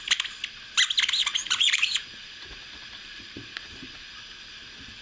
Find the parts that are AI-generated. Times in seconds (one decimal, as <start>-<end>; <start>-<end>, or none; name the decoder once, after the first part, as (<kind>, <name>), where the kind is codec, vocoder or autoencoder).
1.2-4.2 (vocoder, Vocos)